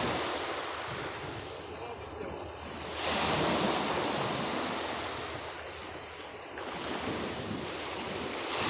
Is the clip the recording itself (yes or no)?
yes